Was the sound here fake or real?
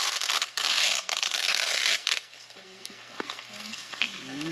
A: fake